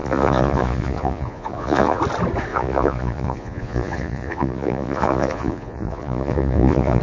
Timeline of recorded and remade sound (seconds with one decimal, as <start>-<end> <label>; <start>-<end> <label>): 0.0-2.0 remade; 2.0-2.5 recorded; 2.5-7.0 remade